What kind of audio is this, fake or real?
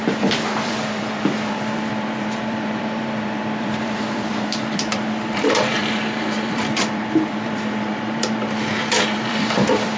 fake